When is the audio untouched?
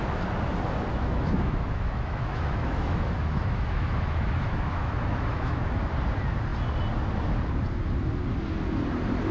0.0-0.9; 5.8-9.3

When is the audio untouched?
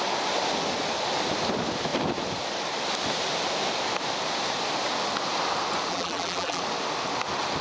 0.0-5.9; 6.6-7.6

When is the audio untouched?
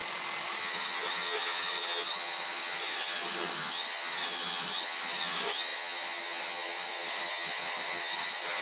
0.0-0.6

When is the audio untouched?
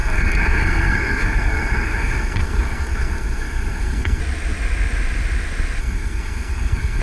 4.2-5.8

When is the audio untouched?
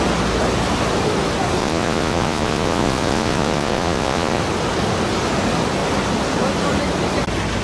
0.0-1.6; 4.4-7.6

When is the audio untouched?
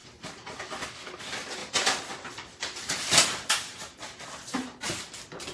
0.0-1.6; 4.9-5.5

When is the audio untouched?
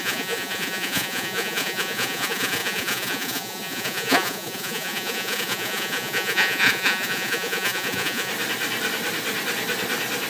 8.3-10.3